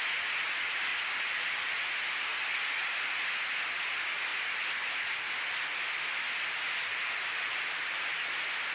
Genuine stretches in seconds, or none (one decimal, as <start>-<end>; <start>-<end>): 0.0-0.9; 1.6-6.9